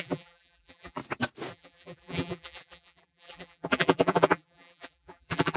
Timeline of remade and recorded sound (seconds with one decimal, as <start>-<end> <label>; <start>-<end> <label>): 0.0-1.0 remade; 1.0-1.5 recorded; 1.5-5.6 remade

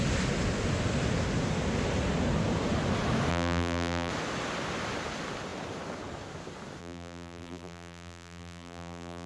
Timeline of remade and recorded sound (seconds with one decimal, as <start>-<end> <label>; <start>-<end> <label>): 0.0-3.3 recorded; 3.3-4.1 remade; 4.1-6.8 recorded; 6.8-9.3 remade